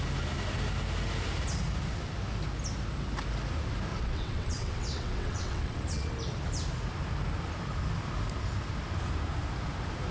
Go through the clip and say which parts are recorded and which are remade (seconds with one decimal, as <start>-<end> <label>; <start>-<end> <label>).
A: 0.0-3.9 recorded; 3.9-6.1 remade; 6.1-10.1 recorded